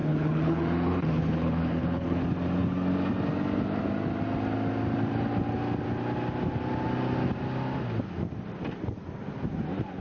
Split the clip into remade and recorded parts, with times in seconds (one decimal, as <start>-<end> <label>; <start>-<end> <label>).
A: 0.0-2.2 remade; 2.2-10.0 recorded